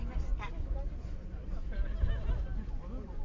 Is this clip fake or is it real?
real